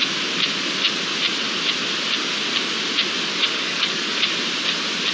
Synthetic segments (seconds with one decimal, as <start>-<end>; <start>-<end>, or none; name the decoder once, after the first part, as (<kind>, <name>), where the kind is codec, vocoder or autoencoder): 3.3-4.2 (codec, DAC)